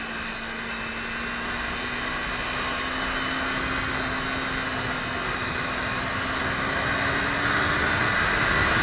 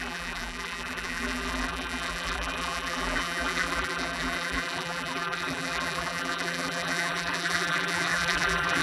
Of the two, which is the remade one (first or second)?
second